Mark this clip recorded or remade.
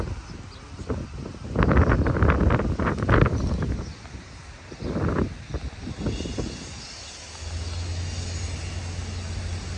recorded